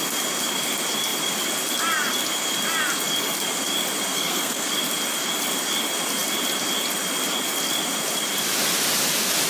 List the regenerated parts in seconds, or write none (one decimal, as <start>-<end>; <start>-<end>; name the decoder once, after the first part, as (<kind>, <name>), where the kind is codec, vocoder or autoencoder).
4.1-4.7 (codec, SNAC)